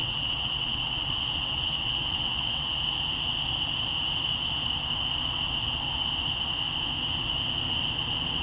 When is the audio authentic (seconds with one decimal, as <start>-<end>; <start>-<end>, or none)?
2.8-8.4